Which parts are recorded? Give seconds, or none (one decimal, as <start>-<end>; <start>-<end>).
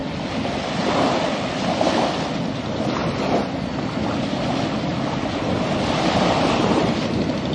4.9-5.9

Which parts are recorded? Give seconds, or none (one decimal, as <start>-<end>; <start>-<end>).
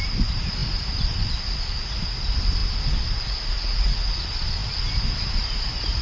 0.0-6.0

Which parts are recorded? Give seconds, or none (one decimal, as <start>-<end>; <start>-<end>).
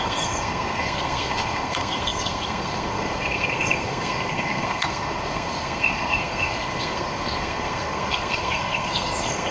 none